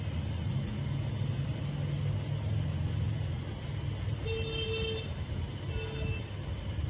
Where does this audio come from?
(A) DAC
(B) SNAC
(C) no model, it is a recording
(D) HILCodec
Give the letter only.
C